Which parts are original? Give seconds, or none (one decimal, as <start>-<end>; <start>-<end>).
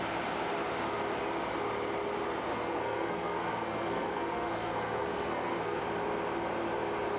0.0-2.5; 5.8-7.2